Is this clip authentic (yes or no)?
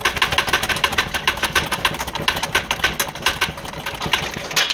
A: yes